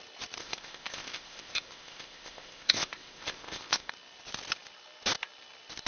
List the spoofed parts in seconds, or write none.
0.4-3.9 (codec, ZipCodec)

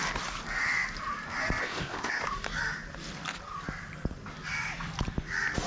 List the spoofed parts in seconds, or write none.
1.6-2.2 (codec, ZipCodec)

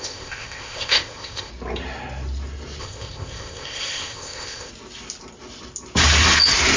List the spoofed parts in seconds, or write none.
0.0-1.5 (codec, ZipCodec); 2.8-4.7

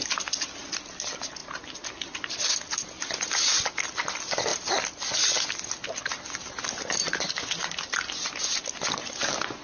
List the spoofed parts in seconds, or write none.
none